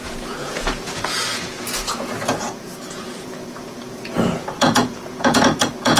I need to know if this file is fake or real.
fake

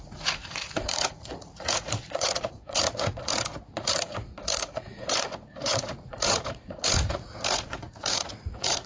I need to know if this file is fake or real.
fake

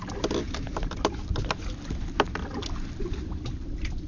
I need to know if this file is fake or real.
real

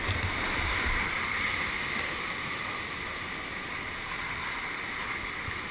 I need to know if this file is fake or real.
real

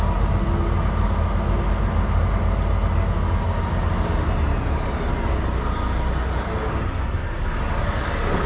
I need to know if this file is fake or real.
real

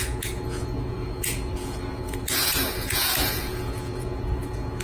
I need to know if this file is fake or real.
fake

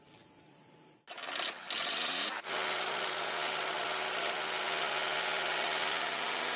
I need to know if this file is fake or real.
real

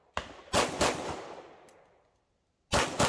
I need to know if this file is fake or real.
real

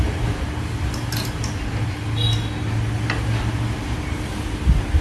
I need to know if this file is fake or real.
real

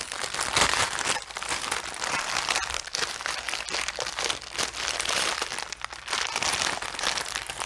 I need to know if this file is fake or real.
real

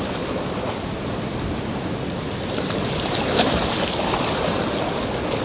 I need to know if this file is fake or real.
real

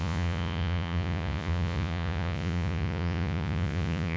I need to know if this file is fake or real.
fake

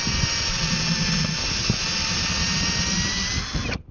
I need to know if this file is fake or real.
real